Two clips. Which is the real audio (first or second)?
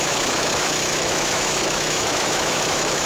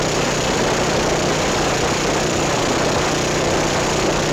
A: second